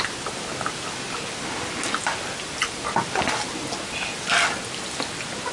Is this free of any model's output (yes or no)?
yes